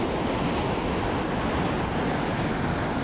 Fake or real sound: real